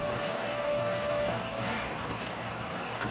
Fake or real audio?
fake